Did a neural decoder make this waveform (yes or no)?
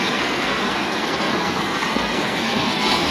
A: yes